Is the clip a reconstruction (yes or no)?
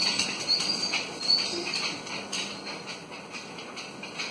no